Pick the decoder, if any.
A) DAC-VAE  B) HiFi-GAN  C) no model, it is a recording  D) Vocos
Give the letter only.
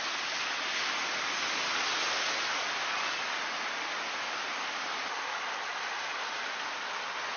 C